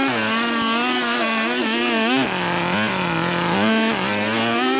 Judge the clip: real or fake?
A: real